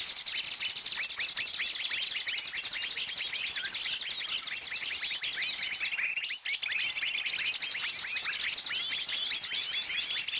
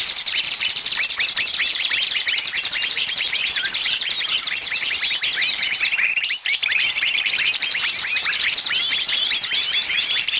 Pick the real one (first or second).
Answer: first